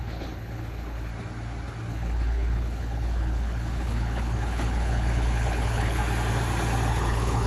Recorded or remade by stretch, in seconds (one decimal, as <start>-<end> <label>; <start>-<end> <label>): 0.0-1.1 remade; 1.1-1.9 recorded; 1.9-6.0 remade; 6.0-6.9 recorded; 6.9-7.5 remade